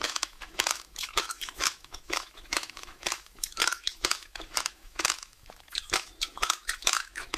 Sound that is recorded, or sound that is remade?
remade